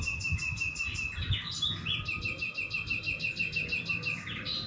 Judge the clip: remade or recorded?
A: recorded